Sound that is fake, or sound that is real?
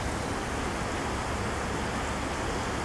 real